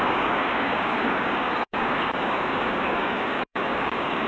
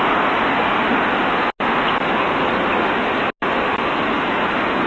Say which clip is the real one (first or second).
second